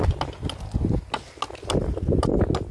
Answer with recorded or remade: recorded